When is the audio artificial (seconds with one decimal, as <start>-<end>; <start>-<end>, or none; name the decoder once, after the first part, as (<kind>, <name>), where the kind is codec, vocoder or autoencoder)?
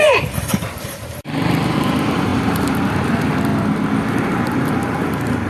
0.0-3.5 (vocoder, BigVGAN v2); 4.1-5.5